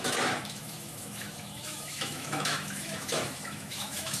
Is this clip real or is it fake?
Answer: fake